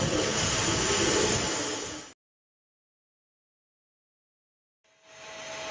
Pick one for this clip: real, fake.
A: real